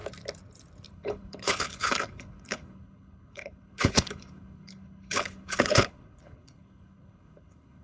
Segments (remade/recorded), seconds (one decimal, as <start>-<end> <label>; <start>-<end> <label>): 0.0-0.9 recorded; 0.9-7.8 remade